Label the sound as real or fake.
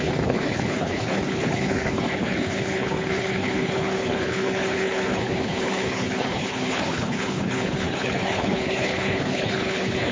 fake